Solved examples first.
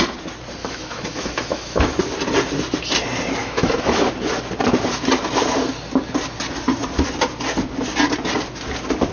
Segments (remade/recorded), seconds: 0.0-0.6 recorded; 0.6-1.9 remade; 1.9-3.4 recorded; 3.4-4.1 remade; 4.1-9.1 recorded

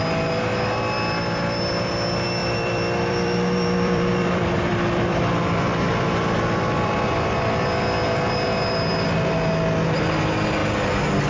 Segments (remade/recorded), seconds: 0.0-2.4 recorded; 2.4-5.2 remade; 5.2-11.3 recorded

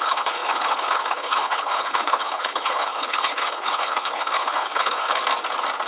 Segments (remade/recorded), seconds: 0.0-5.2 remade; 5.2-5.9 recorded

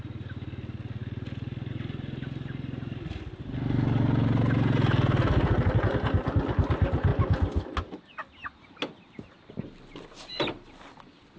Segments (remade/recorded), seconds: 0.0-11.4 recorded

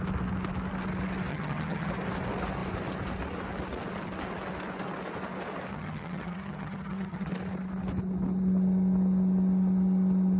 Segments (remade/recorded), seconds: 0.0-1.3 recorded; 1.3-1.9 remade; 1.9-5.7 recorded; 5.7-7.3 remade; 7.3-10.4 recorded

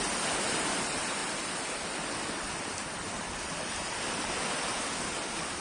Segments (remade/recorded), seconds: 0.0-5.6 remade

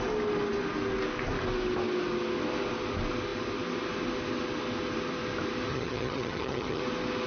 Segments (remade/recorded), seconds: 0.0-5.7 recorded; 5.7-6.8 remade; 6.8-7.3 recorded

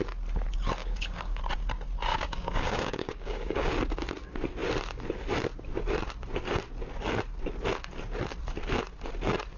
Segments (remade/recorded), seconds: 0.0-0.8 recorded; 0.8-1.4 remade; 1.4-2.1 recorded; 2.1-3.7 remade; 3.7-9.6 recorded